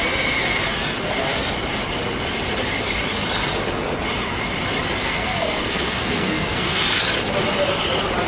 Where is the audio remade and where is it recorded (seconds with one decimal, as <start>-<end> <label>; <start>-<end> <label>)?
0.0-5.0 recorded; 5.0-7.0 remade; 7.0-8.3 recorded